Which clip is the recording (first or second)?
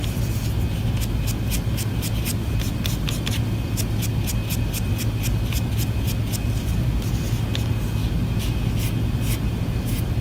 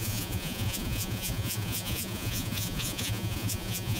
first